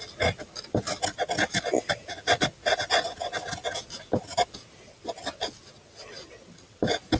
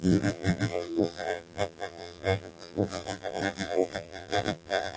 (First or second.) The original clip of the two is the first